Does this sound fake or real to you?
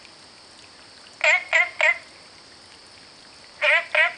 real